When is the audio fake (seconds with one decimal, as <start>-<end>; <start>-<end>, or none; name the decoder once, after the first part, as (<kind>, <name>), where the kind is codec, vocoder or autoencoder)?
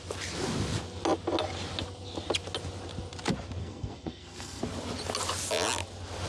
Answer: 3.6-4.6 (codec, SNAC)